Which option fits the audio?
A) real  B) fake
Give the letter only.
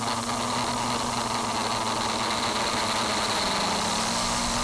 A